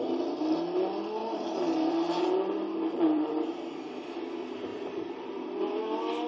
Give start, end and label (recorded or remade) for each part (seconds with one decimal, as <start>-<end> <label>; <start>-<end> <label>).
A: 0.0-1.2 recorded; 1.2-3.3 remade; 3.3-4.7 recorded; 4.7-5.8 remade; 5.8-6.3 recorded